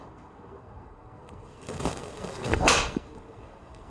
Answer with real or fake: fake